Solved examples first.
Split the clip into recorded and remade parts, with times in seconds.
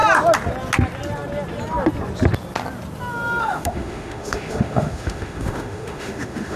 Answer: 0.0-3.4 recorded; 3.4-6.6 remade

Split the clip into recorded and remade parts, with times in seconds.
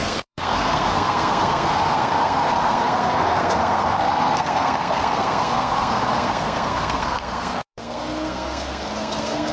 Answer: 0.0-9.5 remade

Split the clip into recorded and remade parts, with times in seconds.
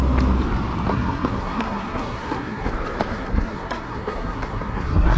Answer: 0.0-0.9 recorded; 0.9-2.7 remade; 2.7-3.1 recorded; 3.1-5.2 remade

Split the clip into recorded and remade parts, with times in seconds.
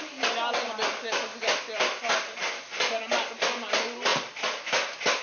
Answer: 0.0-5.2 recorded